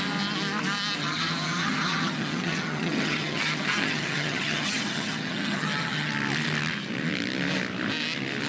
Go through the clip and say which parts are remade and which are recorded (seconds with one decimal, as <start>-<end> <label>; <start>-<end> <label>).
0.0-1.0 recorded; 1.0-6.1 remade; 6.1-8.5 recorded